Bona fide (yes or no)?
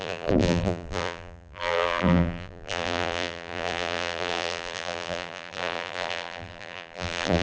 no